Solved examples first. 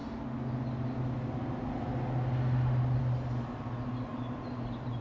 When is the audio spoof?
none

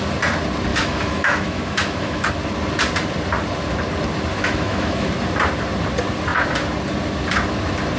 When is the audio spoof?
0.7-2.3 (autoencoder, DAC-VAE); 4.3-5.1

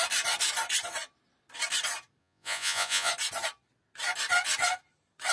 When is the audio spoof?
2.2-3.1 (vocoder, Vocos)

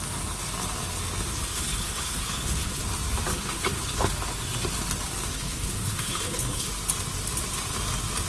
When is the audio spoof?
1.3-2.8 (codec, HILCodec); 3.3-4.1; 5.3-6.7

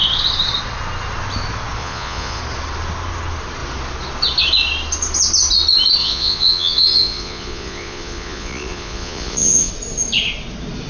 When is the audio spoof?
1.8-2.4 (vocoder, Vocos); 6.0-9.7

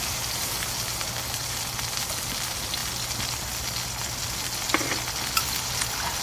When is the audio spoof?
none

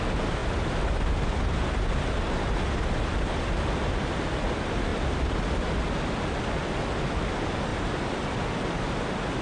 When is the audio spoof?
none

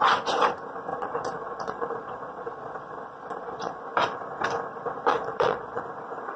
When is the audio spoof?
0.9-3.8 (vocoder, Vocos); 5.1-5.8